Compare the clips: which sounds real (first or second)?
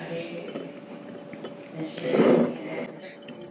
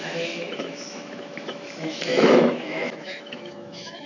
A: first